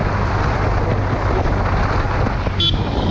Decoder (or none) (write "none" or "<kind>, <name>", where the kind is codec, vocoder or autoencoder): none